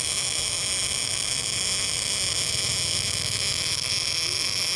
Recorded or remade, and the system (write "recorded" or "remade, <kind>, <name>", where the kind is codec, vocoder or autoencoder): recorded